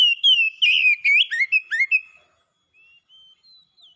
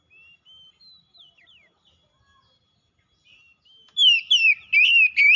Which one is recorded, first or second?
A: first